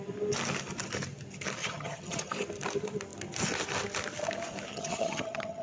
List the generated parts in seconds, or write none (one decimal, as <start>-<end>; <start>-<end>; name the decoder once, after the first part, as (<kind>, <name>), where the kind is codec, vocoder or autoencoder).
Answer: 1.6-2.3 (vocoder, HiFi-GAN); 4.7-5.6